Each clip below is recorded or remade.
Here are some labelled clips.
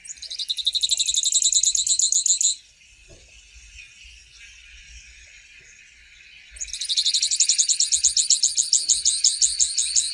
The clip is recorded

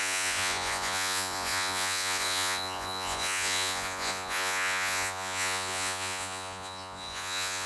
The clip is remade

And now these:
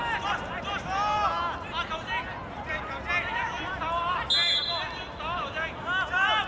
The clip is recorded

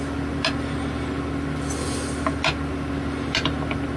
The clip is recorded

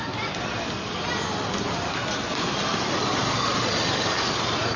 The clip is recorded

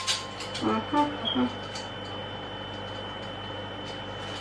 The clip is recorded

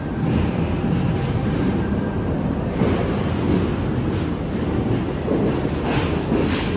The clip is recorded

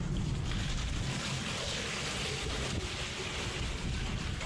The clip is recorded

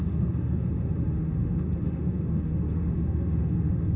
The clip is remade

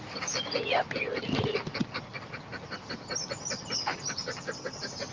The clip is recorded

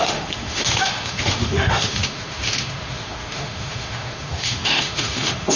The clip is remade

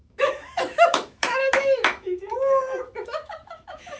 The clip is remade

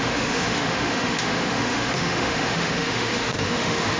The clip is remade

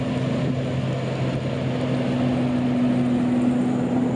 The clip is recorded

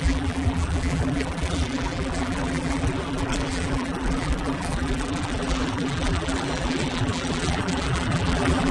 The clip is remade